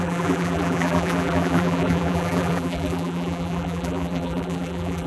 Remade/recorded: remade